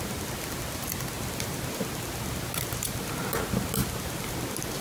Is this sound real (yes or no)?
yes